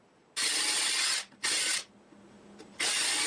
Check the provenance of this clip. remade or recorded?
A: recorded